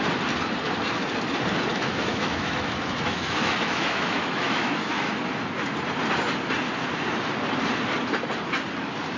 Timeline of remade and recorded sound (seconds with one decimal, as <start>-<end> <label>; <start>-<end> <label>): 0.0-1.7 recorded; 1.7-5.1 remade; 5.1-9.2 recorded